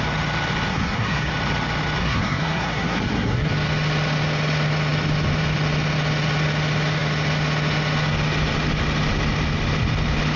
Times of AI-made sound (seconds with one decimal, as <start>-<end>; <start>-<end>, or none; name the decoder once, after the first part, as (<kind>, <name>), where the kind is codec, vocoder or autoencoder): 0.7-1.3 (codec, SNAC); 2.0-3.5